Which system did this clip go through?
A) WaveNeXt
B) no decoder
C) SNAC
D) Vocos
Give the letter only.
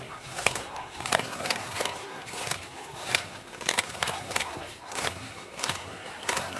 C